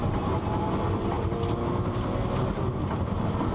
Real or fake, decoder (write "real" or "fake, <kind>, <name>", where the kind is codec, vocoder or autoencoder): fake, vocoder, BigVGAN v2